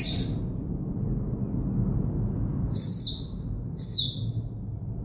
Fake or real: real